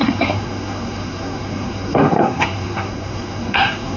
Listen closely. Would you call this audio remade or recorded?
remade